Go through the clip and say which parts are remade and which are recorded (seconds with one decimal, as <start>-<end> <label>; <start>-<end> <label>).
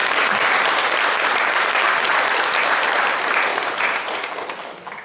0.0-3.0 remade; 3.0-3.5 recorded; 3.5-4.3 remade; 4.3-5.0 recorded